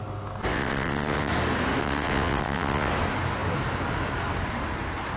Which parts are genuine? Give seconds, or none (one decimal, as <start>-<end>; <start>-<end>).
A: 0.0-0.5; 1.3-1.8; 2.9-5.2